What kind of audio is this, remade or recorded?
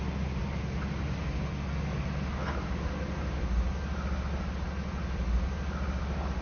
recorded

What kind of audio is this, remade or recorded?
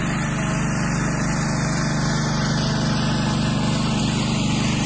recorded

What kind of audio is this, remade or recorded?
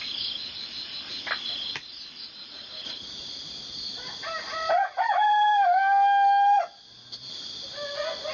recorded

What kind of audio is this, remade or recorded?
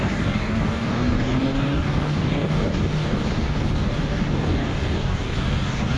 remade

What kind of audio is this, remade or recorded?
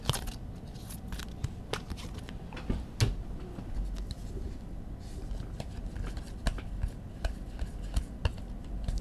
recorded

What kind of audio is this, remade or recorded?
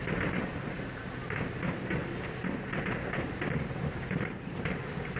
recorded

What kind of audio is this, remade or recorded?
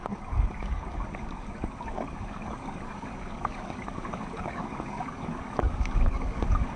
remade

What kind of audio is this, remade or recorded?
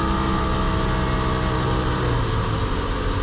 recorded